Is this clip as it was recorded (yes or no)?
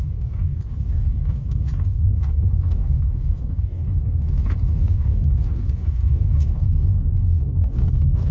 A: no